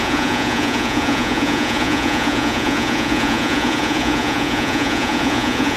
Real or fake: fake